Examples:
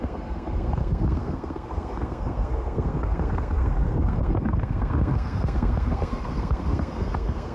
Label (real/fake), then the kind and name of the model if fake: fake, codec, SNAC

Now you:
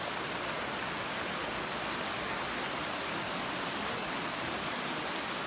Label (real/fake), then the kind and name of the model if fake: real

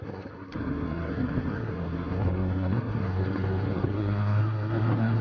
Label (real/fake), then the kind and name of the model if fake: fake, codec, SNAC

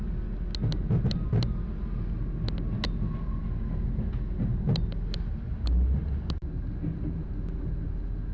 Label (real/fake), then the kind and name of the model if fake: real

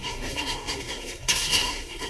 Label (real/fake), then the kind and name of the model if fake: fake, codec, SNAC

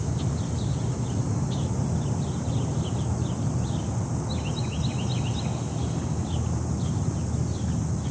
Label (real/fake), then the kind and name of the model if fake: real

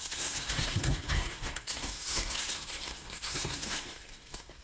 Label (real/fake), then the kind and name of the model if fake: fake, codec, SNAC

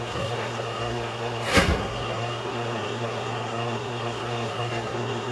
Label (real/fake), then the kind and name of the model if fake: fake, codec, SNAC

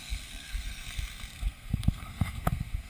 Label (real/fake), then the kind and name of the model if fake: fake, codec, SNAC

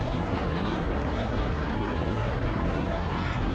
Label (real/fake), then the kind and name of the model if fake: fake, codec, SNAC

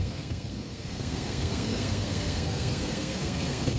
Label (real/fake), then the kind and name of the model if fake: fake, codec, SNAC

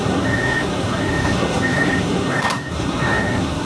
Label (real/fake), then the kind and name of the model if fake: fake, codec, SNAC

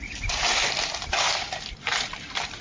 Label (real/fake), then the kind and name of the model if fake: real